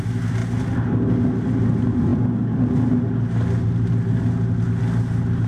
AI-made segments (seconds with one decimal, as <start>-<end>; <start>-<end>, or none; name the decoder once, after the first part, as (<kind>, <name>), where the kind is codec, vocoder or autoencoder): none